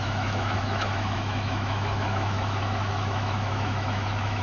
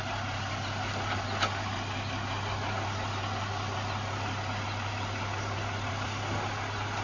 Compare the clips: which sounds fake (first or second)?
first